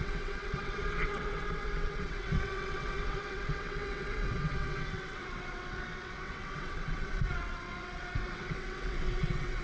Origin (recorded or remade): remade